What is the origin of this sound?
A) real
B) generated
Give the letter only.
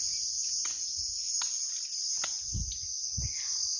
A